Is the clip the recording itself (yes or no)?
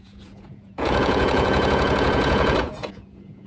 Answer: no